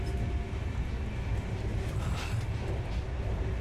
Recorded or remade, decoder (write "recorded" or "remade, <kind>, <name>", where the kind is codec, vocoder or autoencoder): recorded